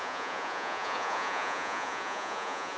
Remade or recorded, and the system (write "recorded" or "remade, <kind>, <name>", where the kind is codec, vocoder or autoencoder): remade, vocoder, Vocos